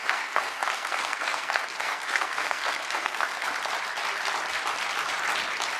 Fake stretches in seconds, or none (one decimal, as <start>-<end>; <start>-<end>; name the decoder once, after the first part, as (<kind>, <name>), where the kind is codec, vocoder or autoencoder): 0.0-3.5 (codec, SNAC)